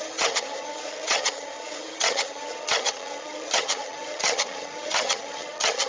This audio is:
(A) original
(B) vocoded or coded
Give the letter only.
B